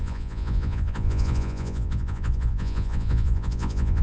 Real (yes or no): no